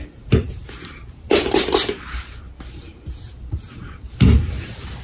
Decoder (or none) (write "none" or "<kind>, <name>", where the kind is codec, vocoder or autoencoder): vocoder, BigVGAN v2